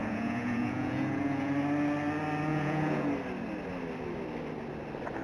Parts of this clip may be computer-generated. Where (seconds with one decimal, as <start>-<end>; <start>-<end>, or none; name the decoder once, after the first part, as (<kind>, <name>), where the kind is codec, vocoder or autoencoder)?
0.0-1.5 (vocoder, Vocos); 2.5-3.1